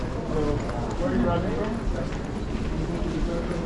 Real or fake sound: real